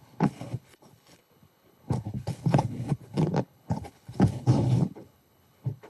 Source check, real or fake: fake